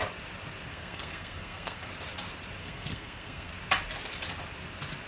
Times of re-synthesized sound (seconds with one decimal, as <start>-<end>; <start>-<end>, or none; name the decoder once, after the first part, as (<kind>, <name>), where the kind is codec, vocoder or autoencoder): 0.7-1.9 (codec, SNAC); 2.6-3.5

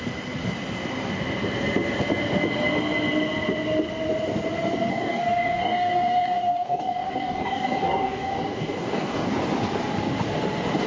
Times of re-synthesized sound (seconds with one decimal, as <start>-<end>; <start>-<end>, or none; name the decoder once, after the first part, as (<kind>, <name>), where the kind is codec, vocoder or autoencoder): 4.9-9.3 (codec, DAC)

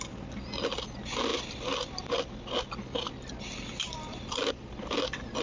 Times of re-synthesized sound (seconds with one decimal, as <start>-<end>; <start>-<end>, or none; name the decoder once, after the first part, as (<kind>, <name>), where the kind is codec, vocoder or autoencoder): none

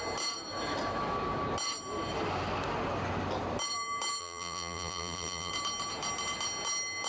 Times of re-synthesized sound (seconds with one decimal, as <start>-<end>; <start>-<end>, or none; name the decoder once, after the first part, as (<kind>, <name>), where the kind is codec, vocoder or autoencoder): 4.2-5.5 (vocoder, BigVGAN v2)